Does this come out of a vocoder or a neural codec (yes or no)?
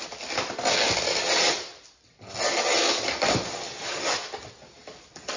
no